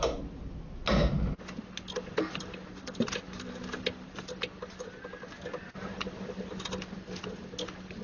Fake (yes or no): no